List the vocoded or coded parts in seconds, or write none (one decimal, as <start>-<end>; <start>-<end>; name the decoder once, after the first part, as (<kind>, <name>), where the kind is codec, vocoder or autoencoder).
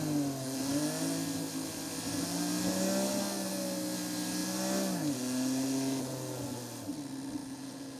7.4-8.0 (vocoder, Vocos)